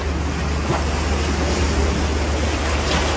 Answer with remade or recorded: recorded